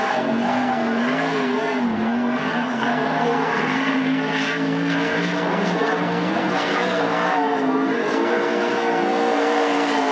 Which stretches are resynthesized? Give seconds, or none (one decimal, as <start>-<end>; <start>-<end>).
0.0-10.1